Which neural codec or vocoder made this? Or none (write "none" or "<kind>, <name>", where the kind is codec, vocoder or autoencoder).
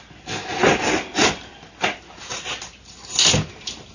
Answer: none